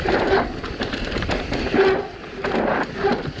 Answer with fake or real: real